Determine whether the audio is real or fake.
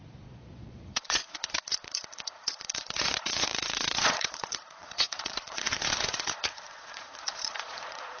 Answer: fake